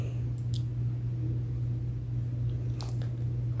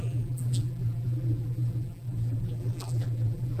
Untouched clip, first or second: first